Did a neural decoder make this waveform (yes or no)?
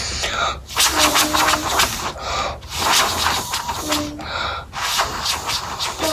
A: no